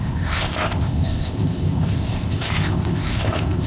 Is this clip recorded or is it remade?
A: remade